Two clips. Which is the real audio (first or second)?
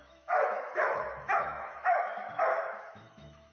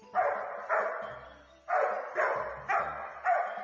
second